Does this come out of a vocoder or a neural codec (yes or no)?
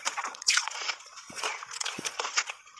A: yes